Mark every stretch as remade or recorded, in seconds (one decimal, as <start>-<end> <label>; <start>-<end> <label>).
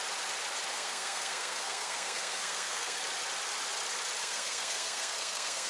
0.0-0.7 recorded; 0.7-3.0 remade; 3.0-4.2 recorded; 4.2-5.7 remade